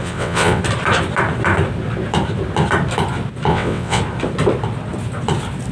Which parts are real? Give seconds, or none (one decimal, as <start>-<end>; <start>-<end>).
0.6-3.5; 4.0-5.7